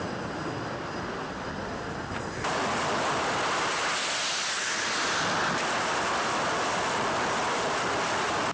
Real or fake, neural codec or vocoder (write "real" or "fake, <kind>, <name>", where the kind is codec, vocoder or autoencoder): real